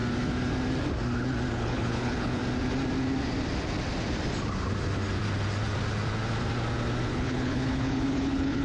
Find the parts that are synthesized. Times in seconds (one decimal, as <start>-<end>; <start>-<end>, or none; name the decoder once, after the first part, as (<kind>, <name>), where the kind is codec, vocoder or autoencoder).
1.5-2.4 (codec, HILCodec); 7.1-8.6